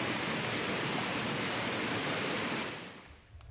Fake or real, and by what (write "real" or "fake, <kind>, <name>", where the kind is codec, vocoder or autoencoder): real